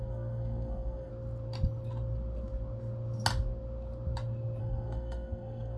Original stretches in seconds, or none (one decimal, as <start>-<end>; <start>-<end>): 1.1-4.6